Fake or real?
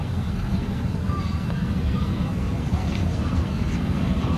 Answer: fake